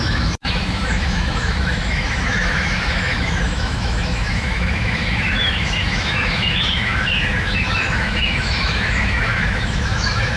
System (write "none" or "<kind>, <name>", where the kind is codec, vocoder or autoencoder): autoencoder, DAC-VAE